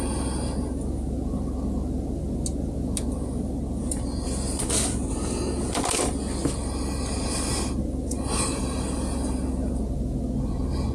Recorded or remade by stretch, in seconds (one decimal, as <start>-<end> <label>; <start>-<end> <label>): 0.0-10.9 recorded